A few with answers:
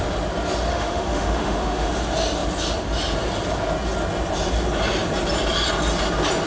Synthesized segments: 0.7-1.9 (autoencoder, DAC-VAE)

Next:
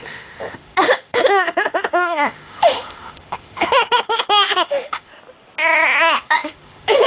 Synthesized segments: 0.0-5.1 (autoencoder, DAC-VAE); 6.0-7.1